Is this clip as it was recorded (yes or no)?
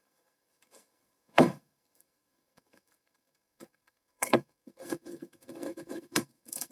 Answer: no